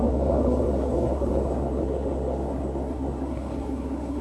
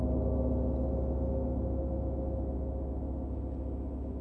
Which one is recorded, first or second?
second